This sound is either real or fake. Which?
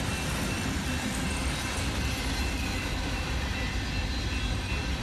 real